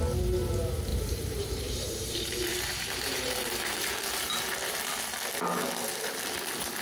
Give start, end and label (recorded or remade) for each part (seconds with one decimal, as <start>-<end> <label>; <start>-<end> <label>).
0.0-0.9 recorded; 0.9-4.8 remade; 4.8-6.8 recorded